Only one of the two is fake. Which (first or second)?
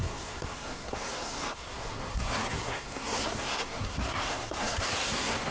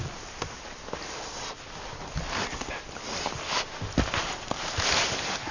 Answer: first